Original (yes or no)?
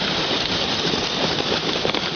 no